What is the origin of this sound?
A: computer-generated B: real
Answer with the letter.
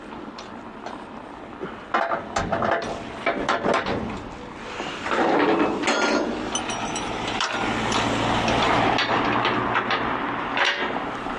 B